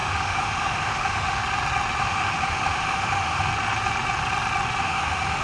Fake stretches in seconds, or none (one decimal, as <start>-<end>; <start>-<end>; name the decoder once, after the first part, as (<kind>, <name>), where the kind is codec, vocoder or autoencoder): 0.0-1.4 (autoencoder, DAC-VAE); 2.0-3.5; 4.8-5.4